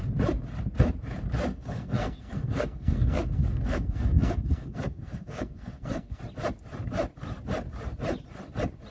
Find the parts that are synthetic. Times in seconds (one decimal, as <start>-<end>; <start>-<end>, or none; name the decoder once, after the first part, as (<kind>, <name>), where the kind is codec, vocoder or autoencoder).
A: 1.5-6.2 (codec, SNAC)